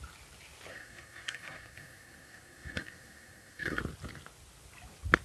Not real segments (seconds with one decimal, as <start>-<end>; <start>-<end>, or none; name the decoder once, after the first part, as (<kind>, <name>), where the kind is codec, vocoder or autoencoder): 0.7-3.8 (codec, SNAC)